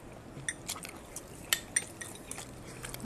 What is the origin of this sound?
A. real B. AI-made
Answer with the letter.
A